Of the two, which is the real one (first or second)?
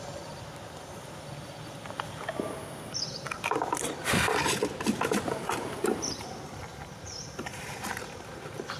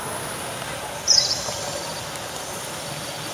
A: second